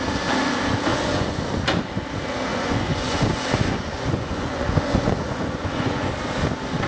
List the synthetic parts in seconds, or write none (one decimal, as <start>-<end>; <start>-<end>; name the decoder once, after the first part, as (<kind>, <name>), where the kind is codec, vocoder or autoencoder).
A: 0.9-1.4 (vocoder, Vocos); 2.5-6.1